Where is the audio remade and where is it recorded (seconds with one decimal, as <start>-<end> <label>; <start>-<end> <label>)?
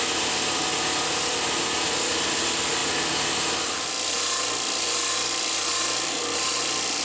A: 0.0-7.0 recorded